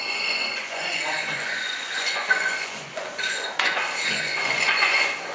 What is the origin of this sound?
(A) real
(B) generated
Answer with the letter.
B